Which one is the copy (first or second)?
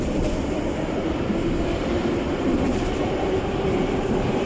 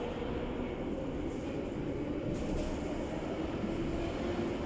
first